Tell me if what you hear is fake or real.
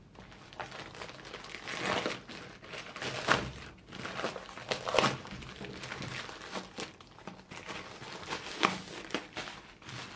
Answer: real